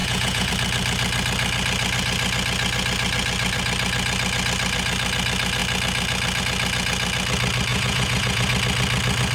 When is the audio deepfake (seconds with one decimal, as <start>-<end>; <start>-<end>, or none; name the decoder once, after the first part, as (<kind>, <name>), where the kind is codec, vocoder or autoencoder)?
0.0-0.5 (vocoder, Vocos); 7.7-8.5